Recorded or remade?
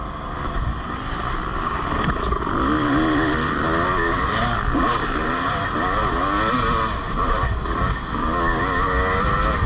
recorded